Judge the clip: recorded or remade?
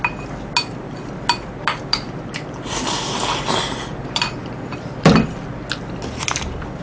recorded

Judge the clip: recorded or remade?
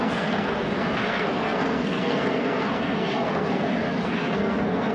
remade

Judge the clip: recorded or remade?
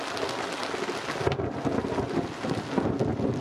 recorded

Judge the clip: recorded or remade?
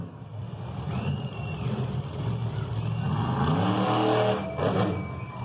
recorded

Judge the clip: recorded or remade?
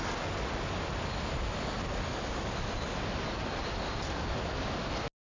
recorded